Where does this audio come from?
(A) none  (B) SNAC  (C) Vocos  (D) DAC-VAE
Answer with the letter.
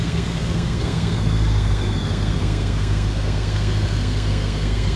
B